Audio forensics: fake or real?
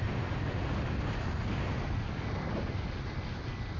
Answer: real